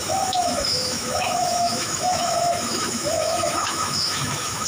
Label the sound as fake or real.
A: fake